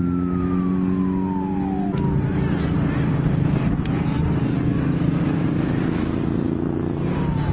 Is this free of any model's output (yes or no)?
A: yes